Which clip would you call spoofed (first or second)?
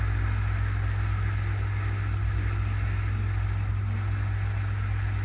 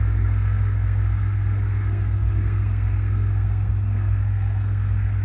second